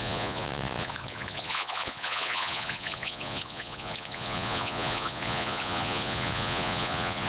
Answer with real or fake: fake